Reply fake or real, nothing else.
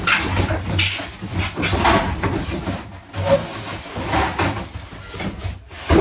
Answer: real